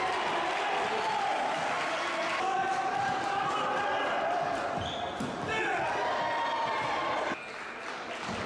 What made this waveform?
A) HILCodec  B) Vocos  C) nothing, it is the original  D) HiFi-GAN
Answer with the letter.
C